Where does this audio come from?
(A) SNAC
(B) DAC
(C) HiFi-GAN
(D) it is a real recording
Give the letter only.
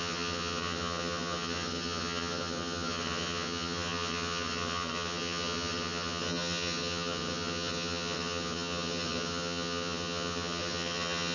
C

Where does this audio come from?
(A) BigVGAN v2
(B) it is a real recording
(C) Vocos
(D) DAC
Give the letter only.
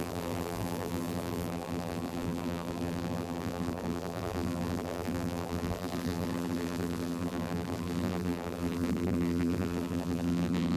A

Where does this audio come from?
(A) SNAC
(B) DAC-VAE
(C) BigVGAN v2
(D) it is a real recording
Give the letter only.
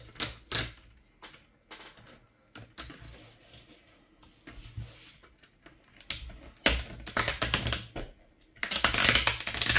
D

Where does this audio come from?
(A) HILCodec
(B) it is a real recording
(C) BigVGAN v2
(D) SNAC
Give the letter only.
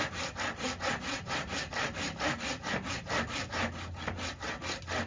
B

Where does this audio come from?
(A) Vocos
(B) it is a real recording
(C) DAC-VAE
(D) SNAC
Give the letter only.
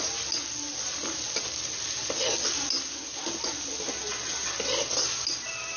B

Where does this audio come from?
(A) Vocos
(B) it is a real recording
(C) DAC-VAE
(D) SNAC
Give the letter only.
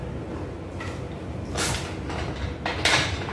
B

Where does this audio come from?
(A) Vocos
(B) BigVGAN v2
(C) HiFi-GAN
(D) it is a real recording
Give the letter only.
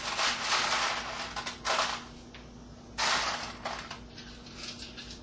D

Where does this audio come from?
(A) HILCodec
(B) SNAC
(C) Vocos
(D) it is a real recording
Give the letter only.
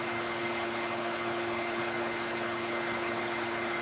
A